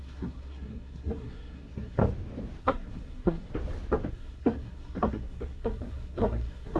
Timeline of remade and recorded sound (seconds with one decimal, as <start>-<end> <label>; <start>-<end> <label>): 0.0-2.0 remade; 2.0-2.6 recorded; 2.6-3.5 remade; 3.5-4.1 recorded; 4.1-6.8 remade